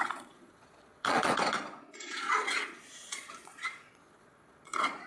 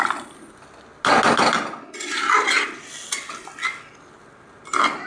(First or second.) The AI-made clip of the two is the first